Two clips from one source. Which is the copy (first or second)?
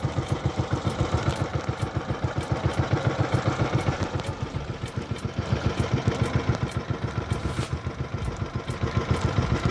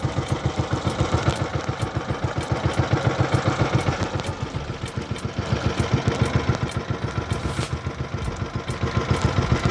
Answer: first